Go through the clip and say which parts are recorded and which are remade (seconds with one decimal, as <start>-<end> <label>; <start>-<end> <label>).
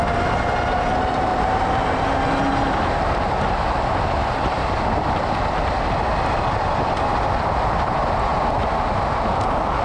0.0-1.3 recorded; 1.3-2.1 remade; 2.1-4.2 recorded; 4.2-5.6 remade; 5.6-9.8 recorded